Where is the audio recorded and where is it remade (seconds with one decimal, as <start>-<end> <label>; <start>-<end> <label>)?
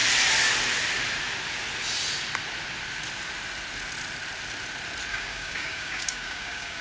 0.0-5.1 recorded; 5.1-6.8 remade